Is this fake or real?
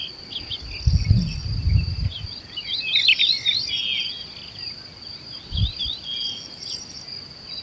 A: real